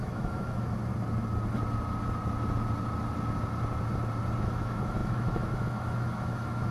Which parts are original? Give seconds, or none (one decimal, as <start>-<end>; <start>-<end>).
0.9-4.4